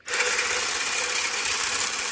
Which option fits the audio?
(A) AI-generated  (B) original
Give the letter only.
B